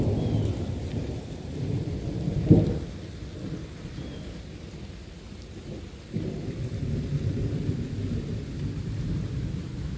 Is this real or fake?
real